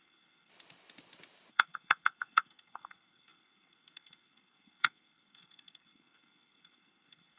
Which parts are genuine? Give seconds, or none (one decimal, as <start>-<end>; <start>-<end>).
0.5-1.5